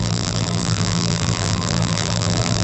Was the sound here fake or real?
fake